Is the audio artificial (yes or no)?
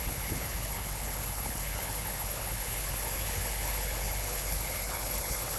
yes